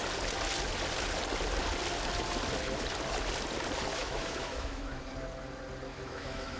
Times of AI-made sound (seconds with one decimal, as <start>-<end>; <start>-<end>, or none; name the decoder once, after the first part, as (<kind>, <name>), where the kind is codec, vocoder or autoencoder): 3.9-5.0 (autoencoder, DAC-VAE); 5.9-6.6